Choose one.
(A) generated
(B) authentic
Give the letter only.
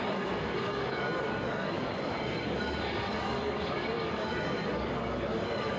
A